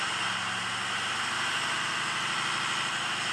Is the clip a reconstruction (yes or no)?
no